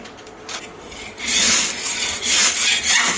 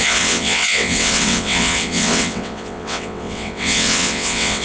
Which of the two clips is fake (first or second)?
second